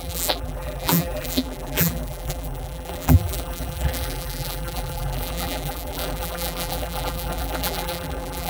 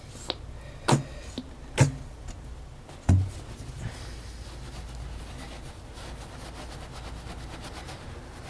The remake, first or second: first